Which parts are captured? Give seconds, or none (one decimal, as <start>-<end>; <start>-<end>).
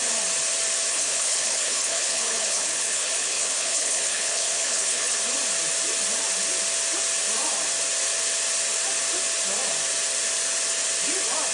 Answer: 0.0-0.9; 5.2-11.5